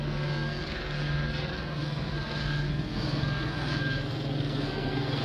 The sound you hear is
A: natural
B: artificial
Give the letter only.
B